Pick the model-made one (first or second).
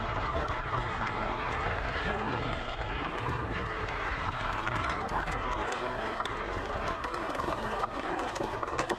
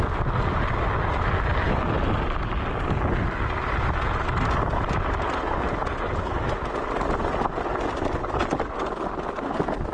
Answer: first